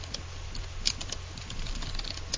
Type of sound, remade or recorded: recorded